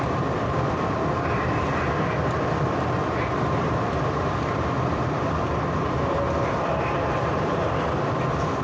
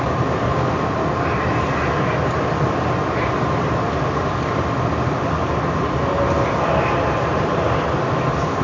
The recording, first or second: second